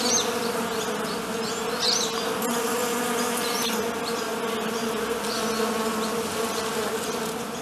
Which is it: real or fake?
real